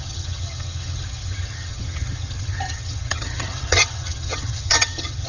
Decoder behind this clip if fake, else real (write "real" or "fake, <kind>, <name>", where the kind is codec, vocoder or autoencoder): fake, vocoder, HiFi-GAN